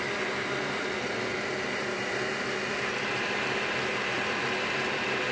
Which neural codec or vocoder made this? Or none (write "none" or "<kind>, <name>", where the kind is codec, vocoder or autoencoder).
vocoder, BigVGAN v2